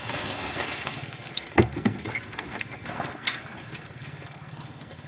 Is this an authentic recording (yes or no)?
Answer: no